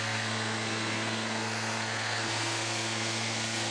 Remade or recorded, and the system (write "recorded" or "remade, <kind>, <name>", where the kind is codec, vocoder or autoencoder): remade, codec, SNAC